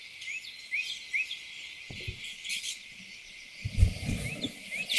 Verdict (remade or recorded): recorded